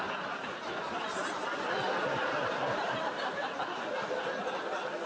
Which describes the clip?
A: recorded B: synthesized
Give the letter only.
A